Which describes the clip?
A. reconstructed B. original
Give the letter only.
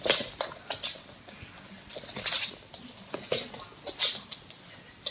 B